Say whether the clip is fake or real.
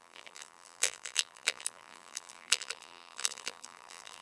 fake